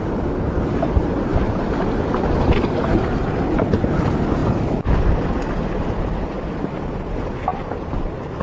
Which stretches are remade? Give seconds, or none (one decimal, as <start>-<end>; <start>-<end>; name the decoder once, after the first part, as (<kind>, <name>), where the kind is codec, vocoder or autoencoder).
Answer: 1.3-3.1 (vocoder, BigVGAN v2); 4.4-6.0